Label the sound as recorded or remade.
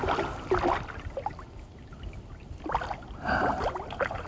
recorded